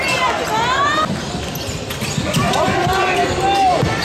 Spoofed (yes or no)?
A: no